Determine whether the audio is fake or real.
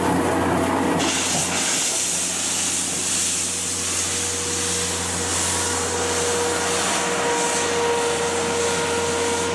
real